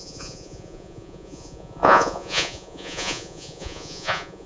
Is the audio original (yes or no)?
no